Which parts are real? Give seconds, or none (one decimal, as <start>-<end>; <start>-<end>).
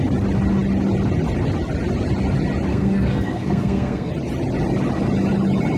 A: 0.0-2.7; 4.1-5.8